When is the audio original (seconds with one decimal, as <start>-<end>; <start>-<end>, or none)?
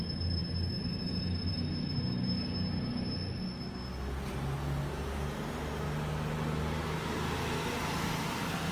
0.0-8.7